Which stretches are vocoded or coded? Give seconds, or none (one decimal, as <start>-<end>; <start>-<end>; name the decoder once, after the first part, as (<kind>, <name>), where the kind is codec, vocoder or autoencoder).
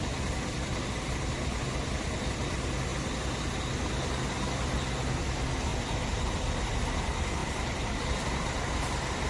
5.7-6.9 (vocoder, BigVGAN v2); 7.4-8.6